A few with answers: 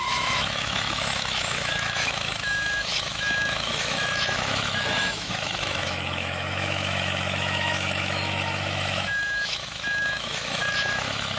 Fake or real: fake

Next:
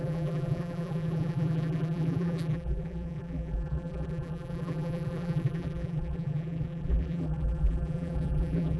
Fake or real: fake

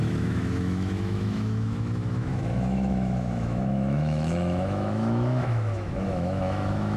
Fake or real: fake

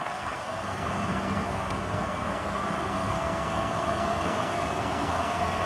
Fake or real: fake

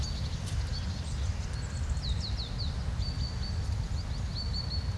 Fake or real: real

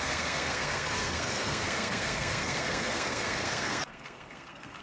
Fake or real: fake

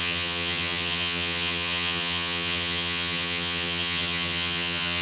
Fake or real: fake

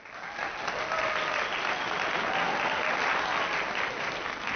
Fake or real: real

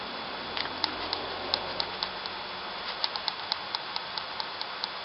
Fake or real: real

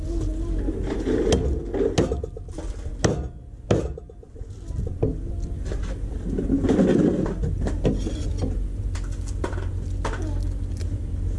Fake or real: real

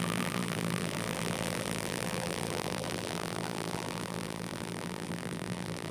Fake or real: fake